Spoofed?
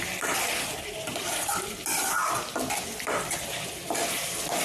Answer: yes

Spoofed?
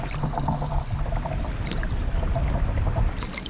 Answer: no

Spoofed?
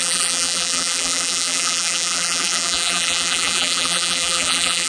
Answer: yes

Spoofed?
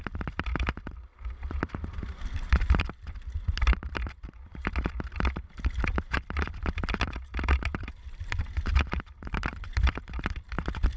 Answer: yes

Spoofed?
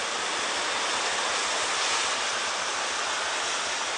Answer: no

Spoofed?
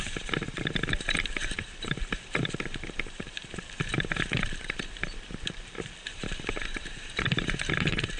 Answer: yes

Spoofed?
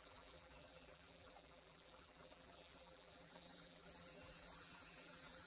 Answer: yes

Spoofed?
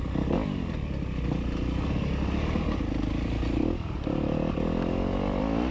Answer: no